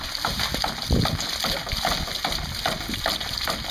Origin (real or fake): real